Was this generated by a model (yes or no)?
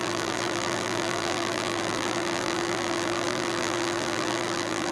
yes